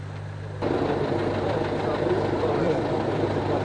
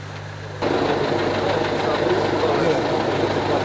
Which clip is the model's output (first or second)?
first